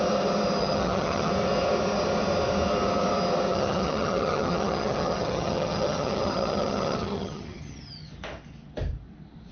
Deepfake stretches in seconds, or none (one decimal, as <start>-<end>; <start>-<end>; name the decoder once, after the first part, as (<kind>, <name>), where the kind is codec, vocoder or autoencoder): 0.6-1.3 (vocoder, HiFi-GAN); 3.5-8.1